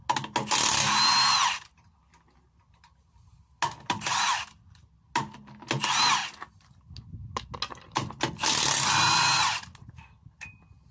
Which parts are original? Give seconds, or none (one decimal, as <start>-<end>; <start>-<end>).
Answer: 0.0-10.9